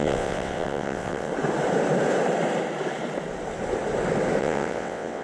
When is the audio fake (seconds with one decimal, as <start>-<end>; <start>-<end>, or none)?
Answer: 0.0-1.3; 4.4-5.2